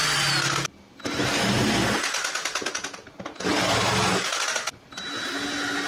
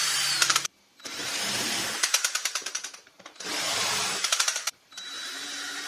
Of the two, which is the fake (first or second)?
second